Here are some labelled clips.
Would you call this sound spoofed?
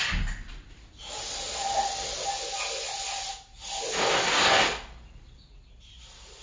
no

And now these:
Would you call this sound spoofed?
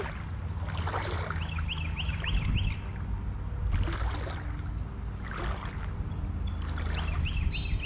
no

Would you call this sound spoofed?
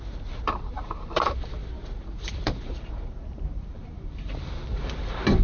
yes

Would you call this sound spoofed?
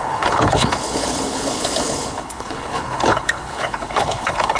yes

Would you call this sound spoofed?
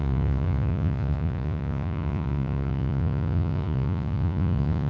yes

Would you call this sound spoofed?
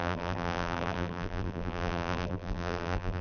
yes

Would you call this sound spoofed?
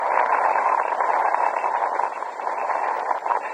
yes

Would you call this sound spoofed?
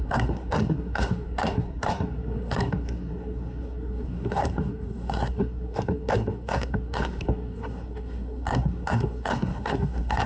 yes